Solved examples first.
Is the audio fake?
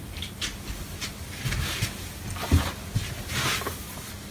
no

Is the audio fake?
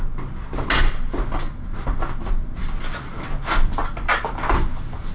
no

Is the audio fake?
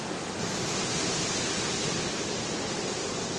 no